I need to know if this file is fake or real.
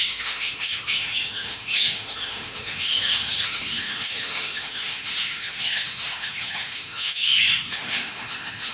fake